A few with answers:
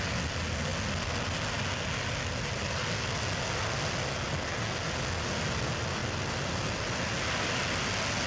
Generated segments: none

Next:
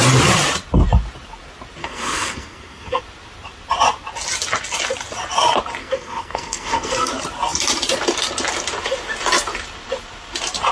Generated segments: 1.8-3.0 (codec, SNAC); 5.8-7.1

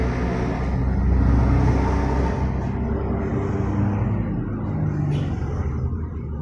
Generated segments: none

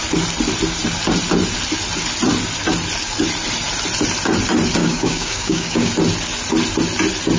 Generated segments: 4.8-5.9 (codec, DAC)